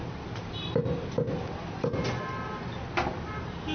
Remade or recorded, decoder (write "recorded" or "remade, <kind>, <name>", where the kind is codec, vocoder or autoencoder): recorded